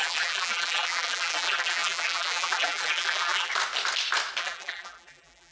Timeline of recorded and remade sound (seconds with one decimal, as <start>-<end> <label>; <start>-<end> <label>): 0.0-3.5 remade; 3.5-4.4 recorded; 4.4-5.5 remade